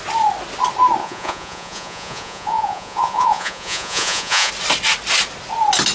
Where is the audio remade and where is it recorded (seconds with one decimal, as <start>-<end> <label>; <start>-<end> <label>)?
0.0-1.0 recorded; 1.0-4.5 remade; 4.5-5.9 recorded